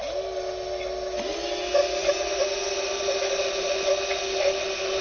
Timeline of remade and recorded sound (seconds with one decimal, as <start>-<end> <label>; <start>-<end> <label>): 0.0-2.0 recorded; 2.0-3.7 remade; 3.7-5.0 recorded